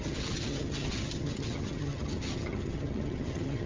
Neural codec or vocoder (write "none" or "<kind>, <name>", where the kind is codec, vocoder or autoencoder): vocoder, HiFi-GAN